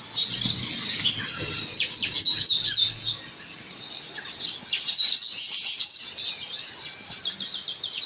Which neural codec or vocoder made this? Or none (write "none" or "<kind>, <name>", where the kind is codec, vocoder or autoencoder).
none